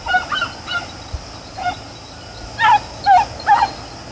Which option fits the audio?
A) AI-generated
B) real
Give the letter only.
B